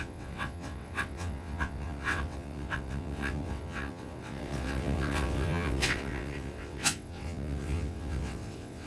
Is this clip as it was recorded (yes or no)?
no